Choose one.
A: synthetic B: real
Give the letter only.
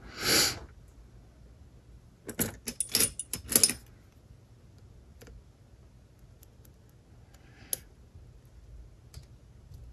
B